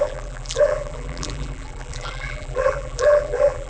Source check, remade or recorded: remade